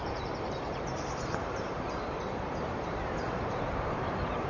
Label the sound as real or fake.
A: fake